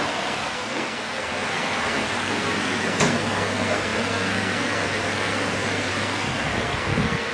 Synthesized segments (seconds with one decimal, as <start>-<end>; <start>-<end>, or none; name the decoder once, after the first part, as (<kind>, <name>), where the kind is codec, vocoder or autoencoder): 0.0-7.3 (codec, SNAC)